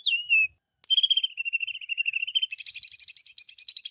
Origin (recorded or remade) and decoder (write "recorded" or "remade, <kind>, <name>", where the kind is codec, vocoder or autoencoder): recorded